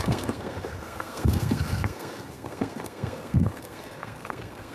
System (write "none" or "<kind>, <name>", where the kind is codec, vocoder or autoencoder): codec, SNAC